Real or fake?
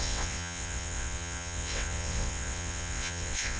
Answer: fake